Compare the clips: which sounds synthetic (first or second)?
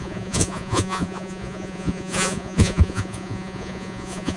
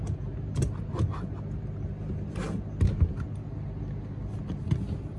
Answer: first